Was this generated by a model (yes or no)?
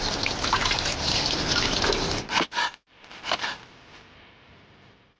yes